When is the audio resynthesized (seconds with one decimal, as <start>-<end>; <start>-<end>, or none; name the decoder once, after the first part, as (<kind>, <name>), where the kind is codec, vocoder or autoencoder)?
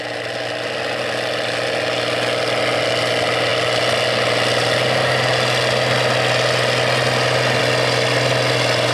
none